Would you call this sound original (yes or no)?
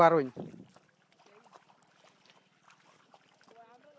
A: yes